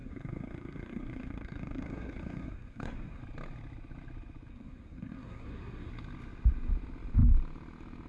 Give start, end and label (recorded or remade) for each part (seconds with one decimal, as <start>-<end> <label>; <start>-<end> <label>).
0.0-3.2 remade; 3.2-4.5 recorded; 4.5-5.9 remade; 5.9-8.1 recorded